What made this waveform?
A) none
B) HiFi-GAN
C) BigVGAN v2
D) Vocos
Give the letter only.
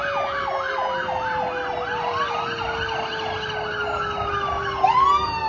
A